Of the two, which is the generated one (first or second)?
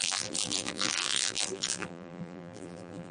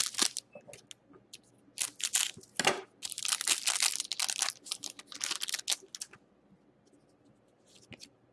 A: first